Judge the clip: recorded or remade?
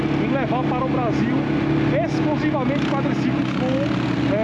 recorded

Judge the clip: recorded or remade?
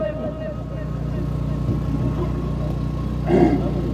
recorded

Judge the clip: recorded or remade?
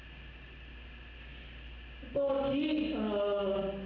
recorded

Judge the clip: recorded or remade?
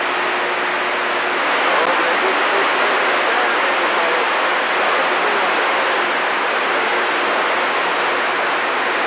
recorded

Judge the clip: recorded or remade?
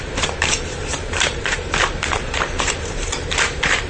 remade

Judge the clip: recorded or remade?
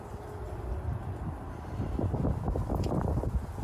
remade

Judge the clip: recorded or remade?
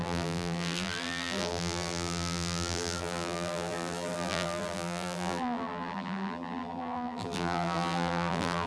remade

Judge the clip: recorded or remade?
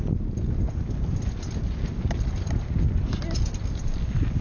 recorded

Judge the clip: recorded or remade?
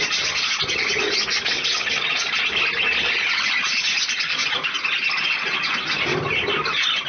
recorded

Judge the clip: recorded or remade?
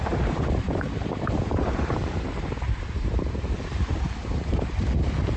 remade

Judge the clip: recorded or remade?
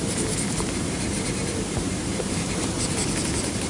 remade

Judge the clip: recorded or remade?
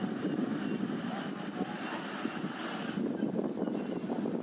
recorded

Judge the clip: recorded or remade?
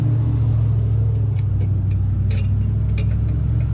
recorded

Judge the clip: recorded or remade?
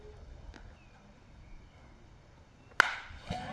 recorded